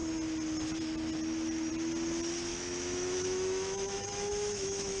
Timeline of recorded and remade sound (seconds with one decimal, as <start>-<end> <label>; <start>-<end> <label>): 0.0-2.5 recorded; 2.5-5.0 remade